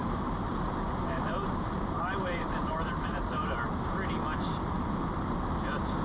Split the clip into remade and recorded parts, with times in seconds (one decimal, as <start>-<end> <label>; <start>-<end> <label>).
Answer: 0.0-3.6 remade; 3.6-6.0 recorded